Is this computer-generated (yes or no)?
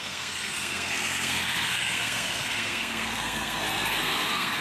yes